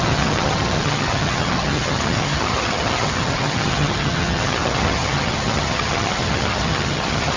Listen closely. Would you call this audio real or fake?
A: fake